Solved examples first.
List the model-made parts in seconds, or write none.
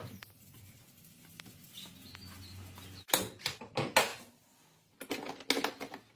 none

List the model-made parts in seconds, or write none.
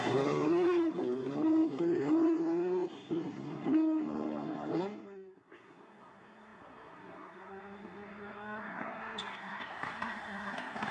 0.0-10.9